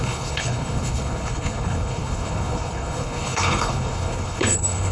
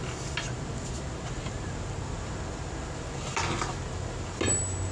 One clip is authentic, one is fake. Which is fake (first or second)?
first